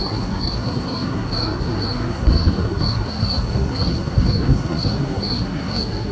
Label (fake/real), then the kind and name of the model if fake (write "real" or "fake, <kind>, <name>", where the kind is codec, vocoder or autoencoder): fake, codec, SNAC